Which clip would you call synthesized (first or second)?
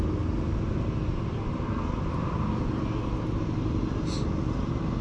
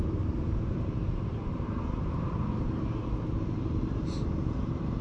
second